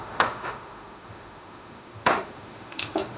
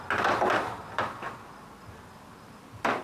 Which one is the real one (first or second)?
second